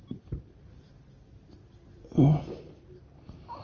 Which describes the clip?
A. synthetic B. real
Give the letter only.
B